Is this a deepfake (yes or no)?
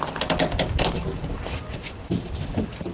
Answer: no